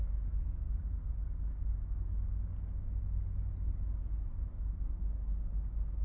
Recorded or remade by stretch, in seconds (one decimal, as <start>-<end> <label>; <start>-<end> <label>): 0.0-6.0 recorded